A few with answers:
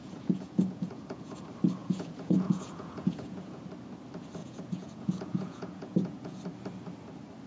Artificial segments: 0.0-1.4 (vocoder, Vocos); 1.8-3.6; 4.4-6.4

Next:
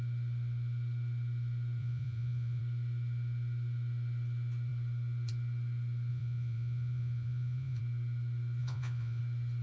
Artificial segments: 1.8-2.6 (vocoder, Vocos); 6.1-7.8; 8.6-9.2

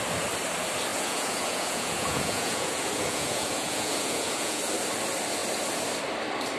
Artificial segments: 0.9-4.6 (vocoder, Vocos)

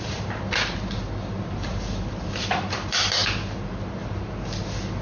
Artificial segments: none

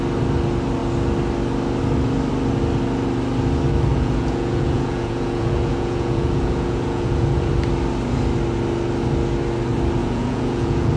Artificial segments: 3.9-7.5 (vocoder, Vocos); 10.0-11.0

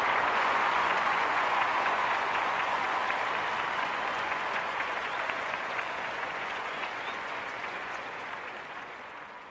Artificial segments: 0.0-3.0 (vocoder, Vocos); 3.7-9.5